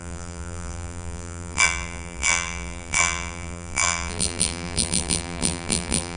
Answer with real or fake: fake